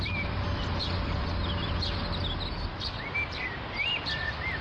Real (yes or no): yes